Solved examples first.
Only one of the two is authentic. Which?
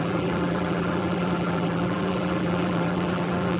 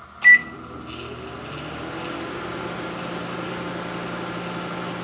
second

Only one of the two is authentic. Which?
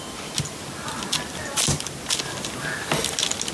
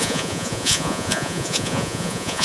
first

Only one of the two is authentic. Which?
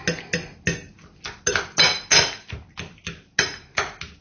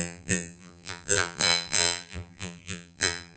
first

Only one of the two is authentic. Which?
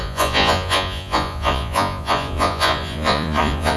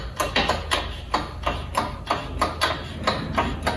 second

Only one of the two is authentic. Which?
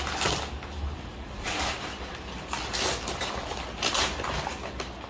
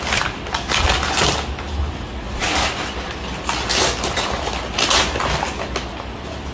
second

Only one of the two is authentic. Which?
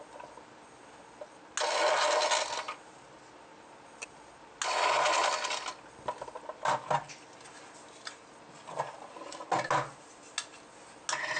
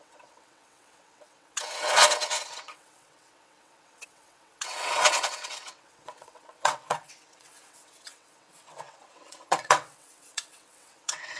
first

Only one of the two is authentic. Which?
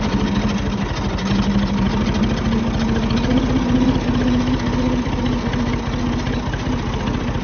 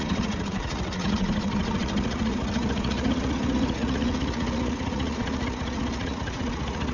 first